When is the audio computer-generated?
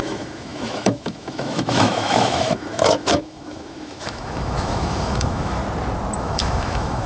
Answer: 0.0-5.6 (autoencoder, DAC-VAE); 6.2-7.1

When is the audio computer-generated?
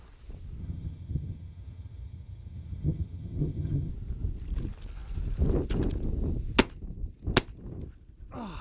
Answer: 0.6-3.9 (vocoder, HiFi-GAN)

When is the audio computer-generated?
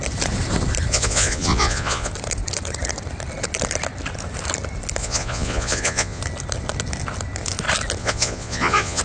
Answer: 0.9-2.1 (vocoder, Vocos); 5.0-6.2; 8.0-9.0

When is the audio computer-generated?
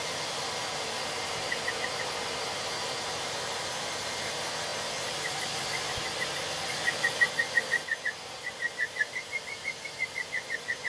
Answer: none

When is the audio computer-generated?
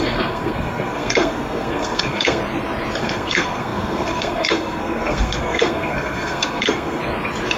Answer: 0.0-2.4 (codec, SNAC); 3.0-7.0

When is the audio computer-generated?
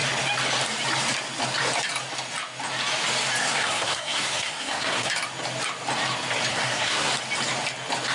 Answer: 3.4-5.1 (codec, SNAC); 6.5-7.1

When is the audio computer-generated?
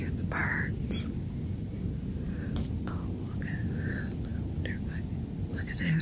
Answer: none